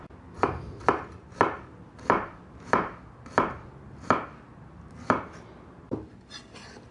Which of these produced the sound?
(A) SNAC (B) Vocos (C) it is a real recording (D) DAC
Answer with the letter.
C